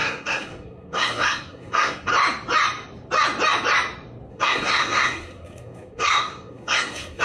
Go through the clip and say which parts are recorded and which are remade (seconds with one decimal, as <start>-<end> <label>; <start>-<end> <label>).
0.0-2.1 remade; 2.1-4.3 recorded; 4.3-7.2 remade